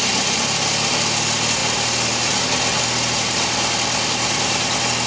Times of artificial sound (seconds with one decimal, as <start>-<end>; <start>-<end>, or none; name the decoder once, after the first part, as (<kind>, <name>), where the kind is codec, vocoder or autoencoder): none